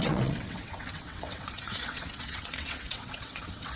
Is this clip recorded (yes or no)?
no